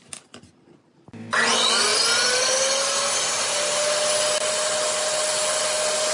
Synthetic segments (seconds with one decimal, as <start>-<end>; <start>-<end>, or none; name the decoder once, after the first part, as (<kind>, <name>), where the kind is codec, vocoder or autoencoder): none